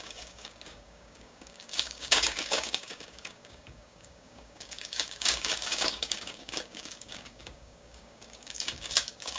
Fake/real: fake